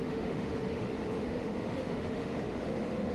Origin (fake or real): fake